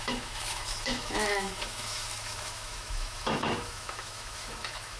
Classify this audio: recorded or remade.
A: remade